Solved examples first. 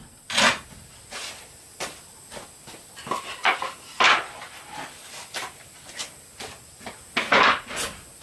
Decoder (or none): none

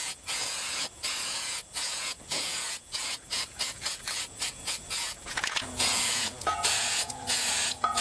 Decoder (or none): vocoder, Vocos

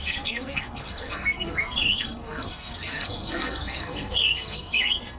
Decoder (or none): codec, SNAC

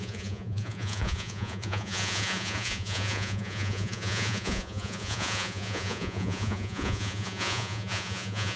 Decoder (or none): vocoder, Vocos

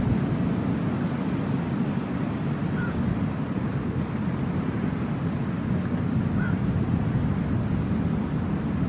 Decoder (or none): none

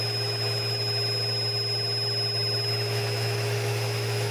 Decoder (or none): autoencoder, DAC-VAE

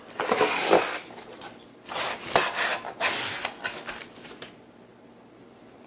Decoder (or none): none